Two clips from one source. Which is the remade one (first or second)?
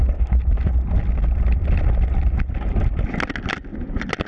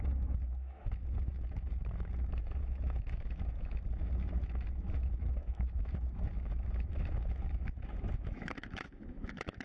second